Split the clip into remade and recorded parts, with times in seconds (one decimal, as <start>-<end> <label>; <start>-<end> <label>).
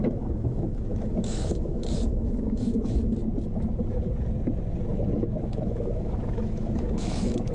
0.0-3.2 remade; 3.2-5.4 recorded; 5.4-7.5 remade